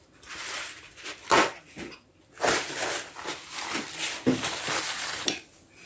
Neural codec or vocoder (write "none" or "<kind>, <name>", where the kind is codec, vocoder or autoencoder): none